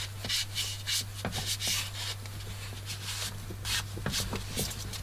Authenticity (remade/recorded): recorded